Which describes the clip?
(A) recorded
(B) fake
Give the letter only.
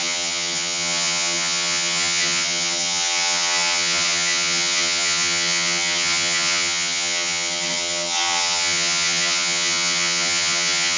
B